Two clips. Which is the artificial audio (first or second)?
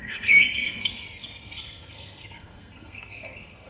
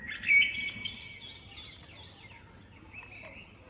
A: first